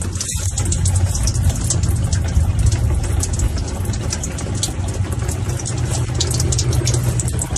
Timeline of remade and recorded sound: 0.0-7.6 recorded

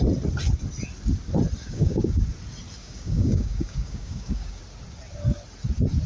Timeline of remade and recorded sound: 0.0-1.6 recorded; 1.6-2.2 remade; 2.2-2.8 recorded; 2.8-4.6 remade; 4.6-6.1 recorded

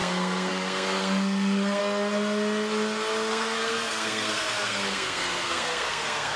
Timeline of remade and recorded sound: 0.0-1.8 remade; 1.8-3.3 recorded; 3.3-6.4 remade

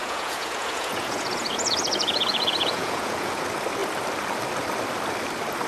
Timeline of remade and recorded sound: 0.0-3.4 remade; 3.4-5.7 recorded

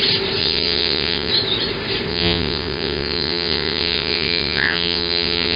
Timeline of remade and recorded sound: 0.0-0.4 recorded; 0.4-1.3 remade; 1.3-2.1 recorded; 2.1-5.6 remade

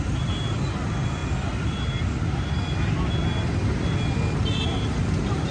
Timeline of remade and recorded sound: 0.0-5.5 recorded

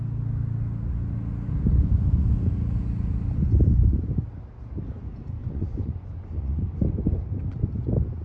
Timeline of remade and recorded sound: 0.0-5.4 recorded; 5.4-6.6 remade; 6.6-8.2 recorded

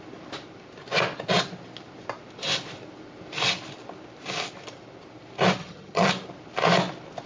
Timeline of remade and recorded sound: 0.0-5.6 recorded; 5.6-6.1 remade; 6.1-7.3 recorded